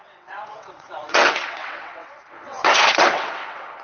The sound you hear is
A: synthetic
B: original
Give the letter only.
A